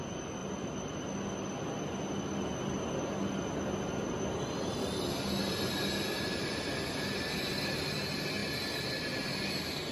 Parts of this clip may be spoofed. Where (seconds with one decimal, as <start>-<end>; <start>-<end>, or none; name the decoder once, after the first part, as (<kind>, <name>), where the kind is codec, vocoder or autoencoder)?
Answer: none